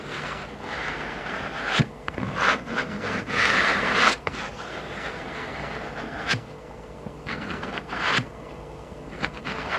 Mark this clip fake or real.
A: fake